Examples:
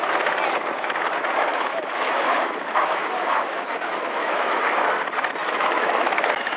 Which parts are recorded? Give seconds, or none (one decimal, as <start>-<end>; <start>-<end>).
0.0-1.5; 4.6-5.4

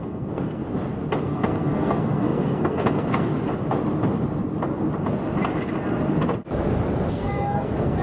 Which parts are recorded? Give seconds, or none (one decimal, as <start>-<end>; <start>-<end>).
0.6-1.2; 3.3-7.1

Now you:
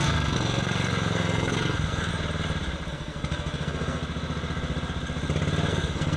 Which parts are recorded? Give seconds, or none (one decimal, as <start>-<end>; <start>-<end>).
2.1-2.9; 4.0-5.7

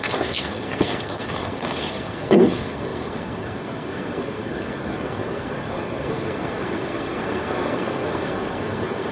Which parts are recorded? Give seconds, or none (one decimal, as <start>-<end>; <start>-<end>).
none

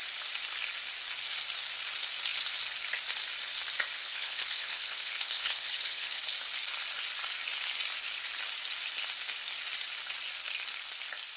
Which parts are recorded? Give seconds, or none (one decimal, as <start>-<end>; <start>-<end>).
0.0-4.0; 6.2-11.4

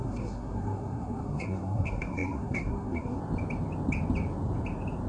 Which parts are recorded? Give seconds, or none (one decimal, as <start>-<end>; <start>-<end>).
3.2-5.1